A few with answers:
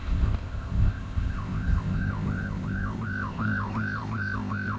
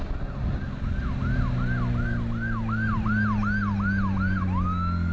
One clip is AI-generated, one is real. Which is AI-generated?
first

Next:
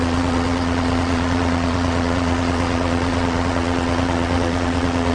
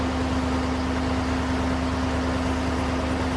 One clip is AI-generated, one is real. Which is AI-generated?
first